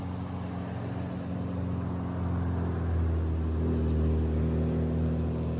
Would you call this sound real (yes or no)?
yes